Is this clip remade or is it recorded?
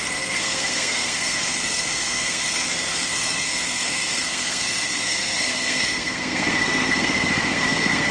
remade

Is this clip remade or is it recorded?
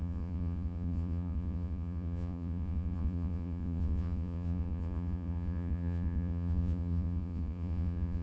remade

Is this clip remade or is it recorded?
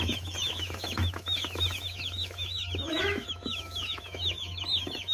remade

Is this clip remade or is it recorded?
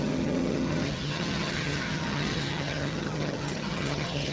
remade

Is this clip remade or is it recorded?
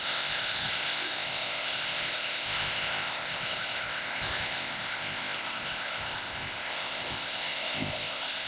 remade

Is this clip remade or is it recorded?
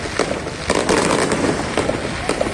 recorded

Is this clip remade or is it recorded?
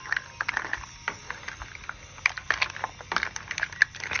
recorded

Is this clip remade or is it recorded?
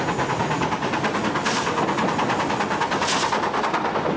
recorded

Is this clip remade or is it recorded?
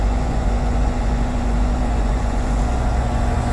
remade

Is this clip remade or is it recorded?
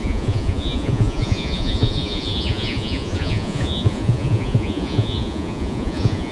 remade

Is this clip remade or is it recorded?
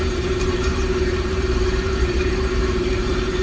remade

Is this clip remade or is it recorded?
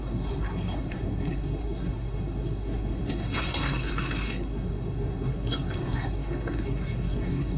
remade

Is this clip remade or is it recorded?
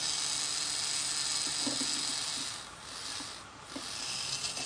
recorded